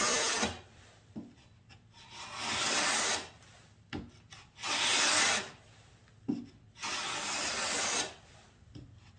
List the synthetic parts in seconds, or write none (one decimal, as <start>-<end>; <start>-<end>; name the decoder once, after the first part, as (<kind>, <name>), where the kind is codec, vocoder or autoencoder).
none